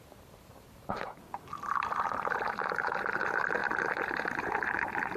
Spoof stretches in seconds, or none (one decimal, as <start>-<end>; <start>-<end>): 0.0-5.2